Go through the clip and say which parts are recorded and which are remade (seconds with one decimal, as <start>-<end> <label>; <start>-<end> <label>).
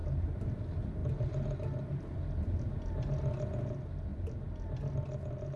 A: 0.0-0.5 remade; 0.5-1.0 recorded; 1.0-2.8 remade; 2.8-5.6 recorded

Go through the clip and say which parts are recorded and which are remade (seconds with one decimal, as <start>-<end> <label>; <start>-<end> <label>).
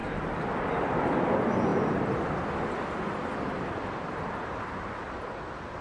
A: 0.0-5.8 remade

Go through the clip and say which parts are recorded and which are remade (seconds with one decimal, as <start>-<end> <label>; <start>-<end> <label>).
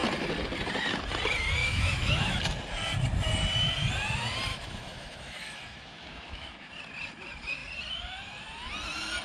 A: 0.0-1.6 recorded; 1.6-2.4 remade; 2.4-4.5 recorded; 4.5-6.7 remade; 6.7-9.2 recorded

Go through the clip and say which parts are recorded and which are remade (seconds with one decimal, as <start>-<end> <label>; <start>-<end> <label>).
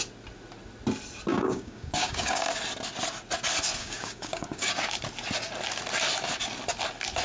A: 0.0-1.3 recorded; 1.3-2.4 remade; 2.4-3.8 recorded; 3.8-4.7 remade; 4.7-7.2 recorded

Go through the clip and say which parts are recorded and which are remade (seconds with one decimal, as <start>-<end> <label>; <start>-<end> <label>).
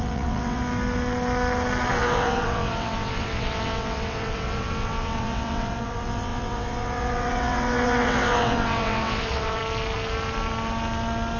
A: 0.0-0.6 remade; 0.6-1.9 recorded; 1.9-9.6 remade; 9.6-11.4 recorded